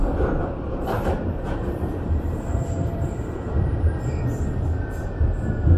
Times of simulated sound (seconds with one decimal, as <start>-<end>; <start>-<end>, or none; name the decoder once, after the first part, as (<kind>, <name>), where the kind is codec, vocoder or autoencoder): 0.4-3.9 (vocoder, BigVGAN v2)